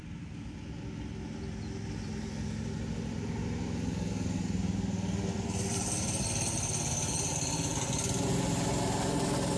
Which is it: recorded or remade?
recorded